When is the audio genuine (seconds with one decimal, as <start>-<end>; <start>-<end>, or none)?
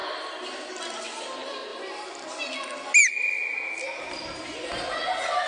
0.0-5.5